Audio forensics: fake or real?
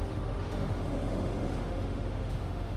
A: fake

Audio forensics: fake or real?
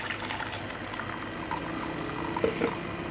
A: real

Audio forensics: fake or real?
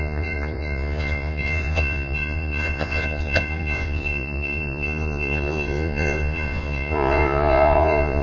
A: fake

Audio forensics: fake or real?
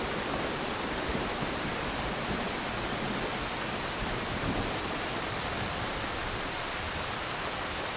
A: real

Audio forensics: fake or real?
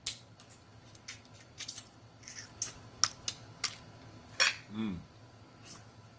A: real